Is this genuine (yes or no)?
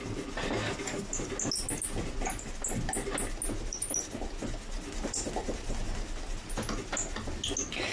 yes